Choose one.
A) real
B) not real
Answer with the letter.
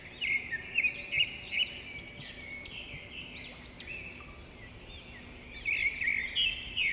A